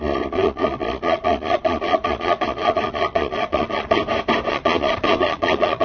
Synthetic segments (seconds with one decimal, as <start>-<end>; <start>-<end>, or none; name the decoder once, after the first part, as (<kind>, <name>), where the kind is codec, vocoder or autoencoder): 0.0-4.0 (vocoder, Vocos); 4.5-5.8